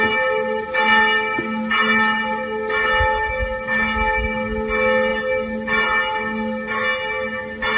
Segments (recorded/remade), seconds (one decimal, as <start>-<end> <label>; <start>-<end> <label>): 0.0-7.8 recorded